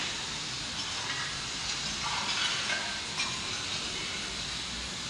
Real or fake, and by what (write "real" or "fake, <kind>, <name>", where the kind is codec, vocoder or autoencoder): real